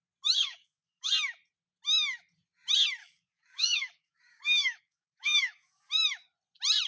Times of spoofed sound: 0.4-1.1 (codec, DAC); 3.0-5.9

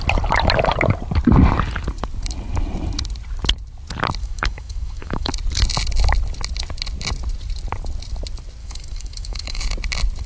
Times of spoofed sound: 4.2-5.3 (autoencoder, DAC-VAE); 8.6-9.6

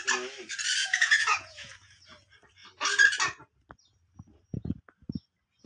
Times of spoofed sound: 0.8-2.0 (vocoder, Vocos)

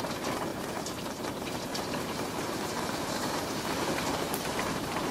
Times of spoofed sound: 0.5-3.6 (vocoder, BigVGAN v2); 4.1-5.1

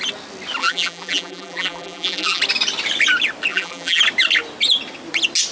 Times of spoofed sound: 0.6-2.4 (vocoder, BigVGAN v2); 3.5-4.0